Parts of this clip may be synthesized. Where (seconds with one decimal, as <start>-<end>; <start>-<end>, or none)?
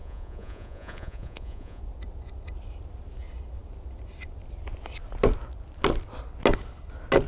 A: 0.0-1.8